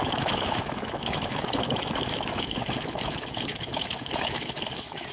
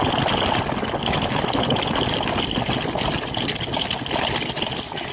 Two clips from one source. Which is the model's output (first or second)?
first